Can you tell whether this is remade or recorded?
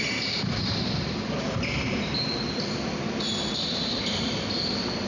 recorded